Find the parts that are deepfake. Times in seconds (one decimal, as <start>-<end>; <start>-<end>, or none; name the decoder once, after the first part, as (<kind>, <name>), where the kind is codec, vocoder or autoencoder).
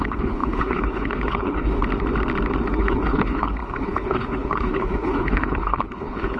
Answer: 0.0-1.8 (codec, HILCodec); 2.7-6.4